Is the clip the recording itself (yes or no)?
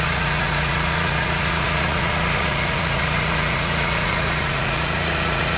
no